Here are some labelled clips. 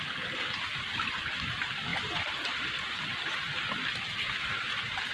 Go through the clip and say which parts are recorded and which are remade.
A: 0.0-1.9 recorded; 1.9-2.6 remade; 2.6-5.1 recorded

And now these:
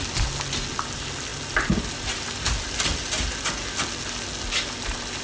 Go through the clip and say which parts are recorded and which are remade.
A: 0.0-5.2 recorded